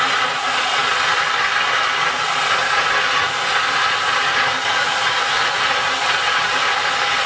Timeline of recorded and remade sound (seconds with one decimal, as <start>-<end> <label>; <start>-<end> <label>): 0.0-7.3 recorded